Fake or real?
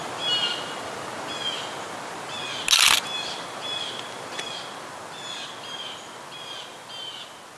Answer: real